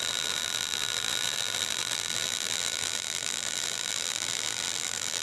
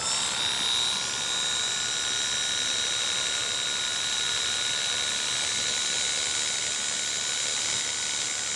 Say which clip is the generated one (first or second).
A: first